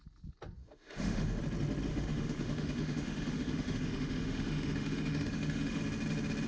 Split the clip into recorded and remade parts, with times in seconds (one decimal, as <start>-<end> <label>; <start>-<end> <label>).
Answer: 0.0-0.6 recorded; 0.6-1.4 remade; 1.4-1.9 recorded; 1.9-5.8 remade; 5.8-6.5 recorded

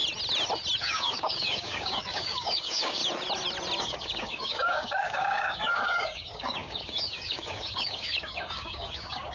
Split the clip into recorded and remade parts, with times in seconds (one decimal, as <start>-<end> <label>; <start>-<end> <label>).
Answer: 0.0-0.8 recorded; 0.8-3.0 remade; 3.0-3.8 recorded; 3.8-9.3 remade

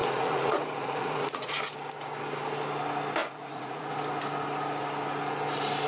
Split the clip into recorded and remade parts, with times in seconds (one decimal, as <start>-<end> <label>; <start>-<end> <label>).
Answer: 0.0-1.5 remade; 1.5-3.2 recorded; 3.2-3.9 remade; 3.9-5.9 recorded

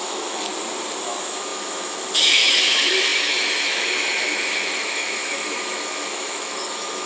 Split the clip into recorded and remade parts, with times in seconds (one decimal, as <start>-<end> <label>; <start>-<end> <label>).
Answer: 0.0-0.5 remade; 0.5-1.0 recorded; 1.0-7.1 remade